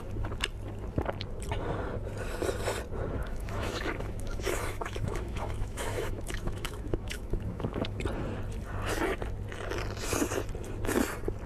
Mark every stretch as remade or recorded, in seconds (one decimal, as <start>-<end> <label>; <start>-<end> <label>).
0.0-3.2 recorded; 3.2-8.0 remade; 8.0-11.5 recorded